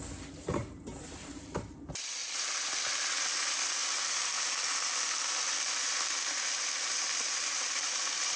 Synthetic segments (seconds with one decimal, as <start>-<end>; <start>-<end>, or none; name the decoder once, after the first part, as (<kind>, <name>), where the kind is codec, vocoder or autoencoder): 0.0-8.4 (vocoder, BigVGAN v2)